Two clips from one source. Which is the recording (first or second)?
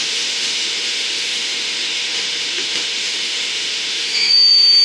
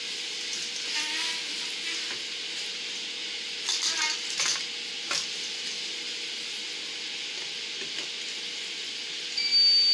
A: second